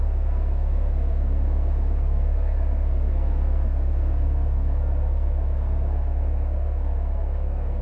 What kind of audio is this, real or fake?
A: fake